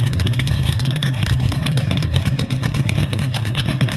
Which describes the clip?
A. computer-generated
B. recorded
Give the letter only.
A